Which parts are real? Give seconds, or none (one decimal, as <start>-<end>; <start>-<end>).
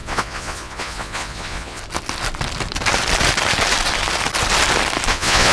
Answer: 1.8-5.1